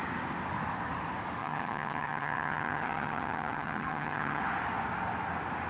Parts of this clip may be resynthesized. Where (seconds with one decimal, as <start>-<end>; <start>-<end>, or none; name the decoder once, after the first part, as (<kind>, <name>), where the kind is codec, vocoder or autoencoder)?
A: 1.4-4.4 (vocoder, HiFi-GAN)